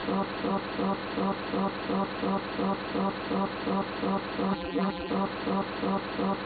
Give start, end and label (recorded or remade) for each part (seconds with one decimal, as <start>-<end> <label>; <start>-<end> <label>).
0.0-4.5 recorded; 4.5-5.1 remade; 5.1-6.5 recorded